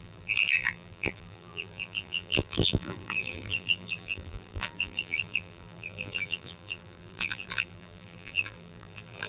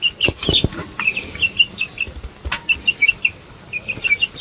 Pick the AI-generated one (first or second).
first